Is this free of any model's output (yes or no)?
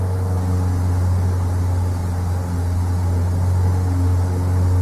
yes